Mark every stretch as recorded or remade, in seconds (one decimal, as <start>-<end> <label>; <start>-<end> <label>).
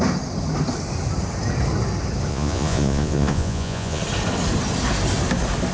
0.0-2.3 recorded; 2.3-4.0 remade; 4.0-5.7 recorded